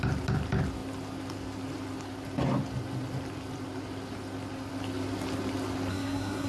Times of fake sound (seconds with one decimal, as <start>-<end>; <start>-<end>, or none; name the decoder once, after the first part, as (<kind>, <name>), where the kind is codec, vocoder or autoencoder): 5.9-6.5 (codec, SNAC)